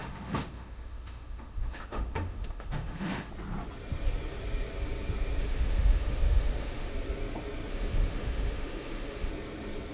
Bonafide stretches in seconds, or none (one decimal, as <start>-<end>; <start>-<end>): 3.3-5.4; 6.9-7.7; 9.3-9.9